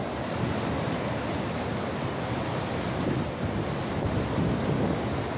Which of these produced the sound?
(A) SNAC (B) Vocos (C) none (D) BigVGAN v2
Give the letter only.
C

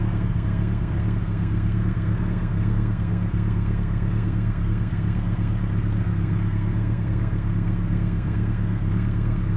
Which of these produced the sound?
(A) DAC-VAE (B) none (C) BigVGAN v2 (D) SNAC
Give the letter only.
D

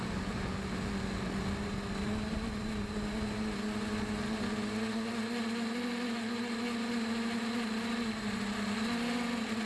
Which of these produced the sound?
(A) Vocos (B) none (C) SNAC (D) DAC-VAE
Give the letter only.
B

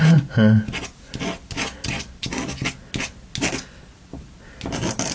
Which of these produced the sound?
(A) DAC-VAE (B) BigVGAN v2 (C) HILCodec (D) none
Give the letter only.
D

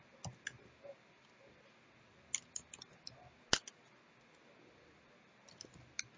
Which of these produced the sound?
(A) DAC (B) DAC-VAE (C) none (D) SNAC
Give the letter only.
C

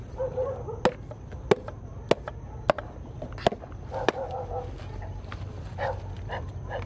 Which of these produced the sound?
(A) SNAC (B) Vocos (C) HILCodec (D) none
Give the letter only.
D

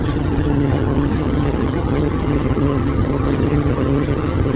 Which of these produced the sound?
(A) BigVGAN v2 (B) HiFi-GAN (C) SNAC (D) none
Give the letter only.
B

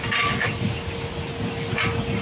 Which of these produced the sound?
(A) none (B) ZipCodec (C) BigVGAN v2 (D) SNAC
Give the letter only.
A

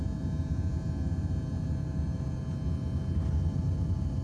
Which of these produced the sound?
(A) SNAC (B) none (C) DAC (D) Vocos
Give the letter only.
B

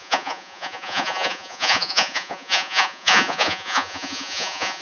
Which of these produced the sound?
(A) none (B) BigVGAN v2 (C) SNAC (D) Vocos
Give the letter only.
D